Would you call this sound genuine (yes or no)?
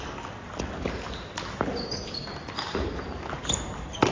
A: yes